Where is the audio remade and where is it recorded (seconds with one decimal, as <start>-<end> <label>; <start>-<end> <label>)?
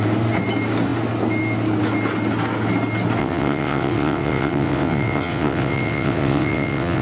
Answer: 0.0-3.2 recorded; 3.2-7.0 remade